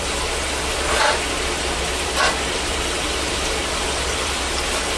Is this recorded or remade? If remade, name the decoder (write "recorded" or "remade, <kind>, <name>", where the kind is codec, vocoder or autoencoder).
remade, vocoder, BigVGAN v2